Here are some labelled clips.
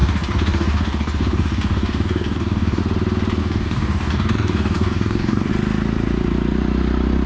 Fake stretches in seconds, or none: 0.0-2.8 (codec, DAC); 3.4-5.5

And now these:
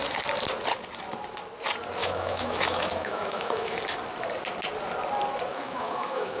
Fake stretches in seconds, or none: 2.0-3.8 (autoencoder, DAC-VAE); 5.5-6.4

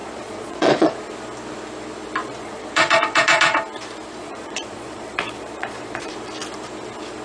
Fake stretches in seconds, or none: 0.0-1.0 (vocoder, Vocos); 2.2-3.6; 4.2-6.1

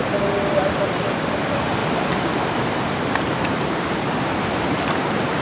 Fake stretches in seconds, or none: 1.4-1.8 (vocoder, BigVGAN v2); 3.5-5.4

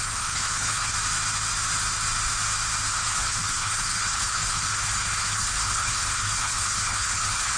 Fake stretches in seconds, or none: 0.0-0.9 (codec, HILCodec); 2.9-7.6

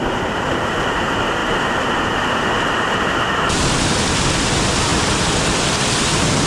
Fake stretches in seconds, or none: 1.4-4.5 (vocoder, BigVGAN v2)

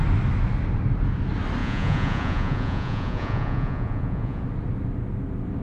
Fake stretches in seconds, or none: 1.6-4.4 (vocoder, Vocos)

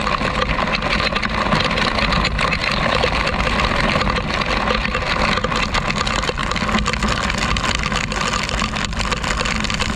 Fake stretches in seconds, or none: 2.6-4.3 (vocoder, BigVGAN v2)